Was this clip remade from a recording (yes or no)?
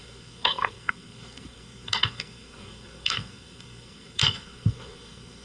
yes